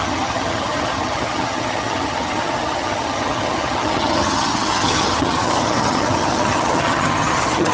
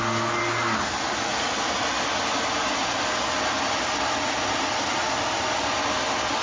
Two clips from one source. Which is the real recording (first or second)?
second